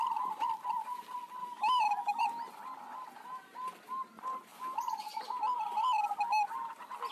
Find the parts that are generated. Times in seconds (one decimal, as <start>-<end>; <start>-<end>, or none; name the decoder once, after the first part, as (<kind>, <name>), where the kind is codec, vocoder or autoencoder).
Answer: 1.4-2.2 (autoencoder, DAC-VAE)